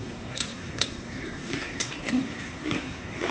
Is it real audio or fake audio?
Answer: fake